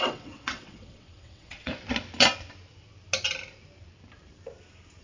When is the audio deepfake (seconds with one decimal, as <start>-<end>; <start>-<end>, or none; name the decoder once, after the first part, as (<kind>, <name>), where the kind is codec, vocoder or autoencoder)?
0.0-1.7 (vocoder, WaveNeXt)